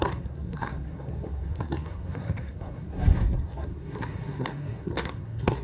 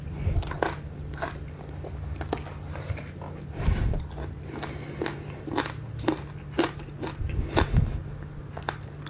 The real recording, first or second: second